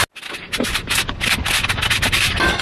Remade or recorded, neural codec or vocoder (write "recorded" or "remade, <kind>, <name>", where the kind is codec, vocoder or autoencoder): recorded